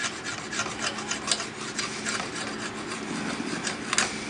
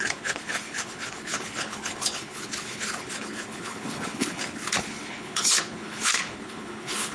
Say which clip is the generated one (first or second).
second